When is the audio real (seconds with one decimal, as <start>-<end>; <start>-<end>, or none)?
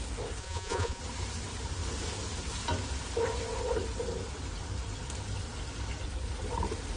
0.0-0.4; 1.0-7.0